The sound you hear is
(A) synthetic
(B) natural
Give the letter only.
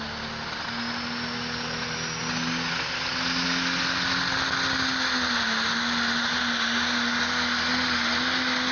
B